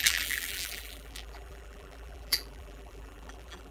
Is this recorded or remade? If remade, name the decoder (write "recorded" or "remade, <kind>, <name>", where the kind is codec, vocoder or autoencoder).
remade, vocoder, BigVGAN v2